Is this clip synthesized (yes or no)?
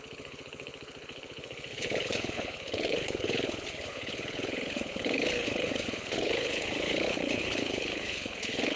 yes